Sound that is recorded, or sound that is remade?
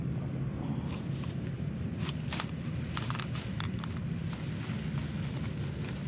recorded